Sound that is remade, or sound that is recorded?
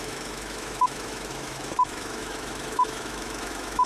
remade